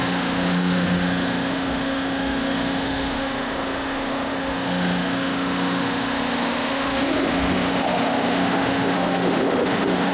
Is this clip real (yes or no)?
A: no